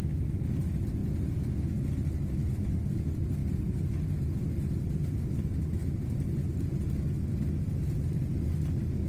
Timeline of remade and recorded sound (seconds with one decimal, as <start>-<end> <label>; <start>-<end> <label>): 0.0-5.8 recorded; 5.8-6.8 remade; 6.8-9.1 recorded